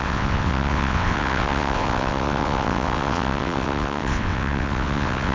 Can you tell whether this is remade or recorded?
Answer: remade